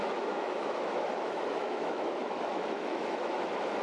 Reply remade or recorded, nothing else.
remade